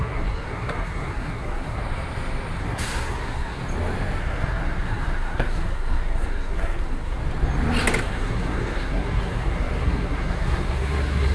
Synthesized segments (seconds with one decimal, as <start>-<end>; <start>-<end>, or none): 0.0-1.8; 2.6-3.6; 4.2-7.2; 8.0-11.3